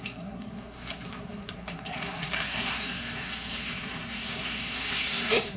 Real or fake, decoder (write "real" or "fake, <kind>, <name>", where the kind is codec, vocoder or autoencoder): fake, codec, SNAC